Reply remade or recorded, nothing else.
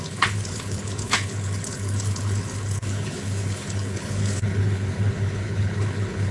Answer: remade